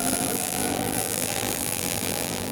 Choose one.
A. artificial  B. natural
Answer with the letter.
A